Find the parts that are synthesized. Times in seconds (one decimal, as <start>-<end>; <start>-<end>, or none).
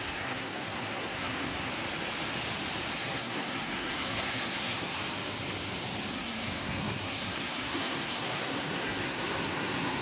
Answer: 0.0-1.7; 2.9-5.0; 6.1-10.0